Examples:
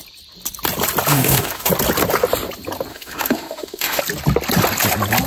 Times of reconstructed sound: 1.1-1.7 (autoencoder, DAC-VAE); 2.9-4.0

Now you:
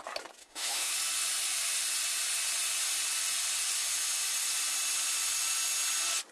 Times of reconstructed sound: 0.4-0.9 (autoencoder, DAC-VAE)

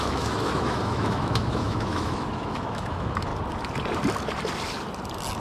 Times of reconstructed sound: 0.0-3.3 (autoencoder, DAC-VAE)

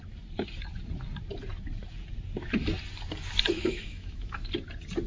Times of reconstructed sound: 3.5-4.3 (autoencoder, DAC-VAE)

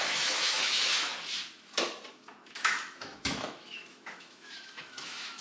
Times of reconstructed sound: 0.0-1.1 (autoencoder, DAC-VAE); 2.1-5.4

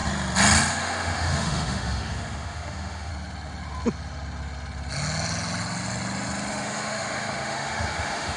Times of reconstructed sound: 0.7-3.1 (autoencoder, DAC-VAE); 6.5-8.4

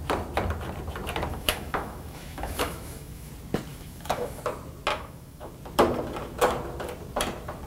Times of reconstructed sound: 1.3-3.3 (autoencoder, DAC-VAE); 3.7-4.4; 4.9-5.5